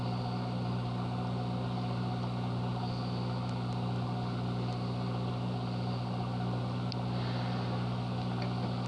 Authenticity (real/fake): real